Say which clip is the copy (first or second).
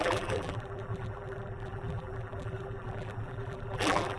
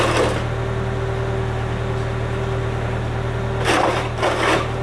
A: first